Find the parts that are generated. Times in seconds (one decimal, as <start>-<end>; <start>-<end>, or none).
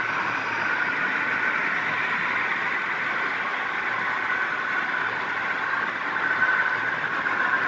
none